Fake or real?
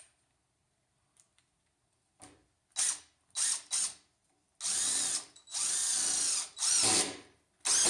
real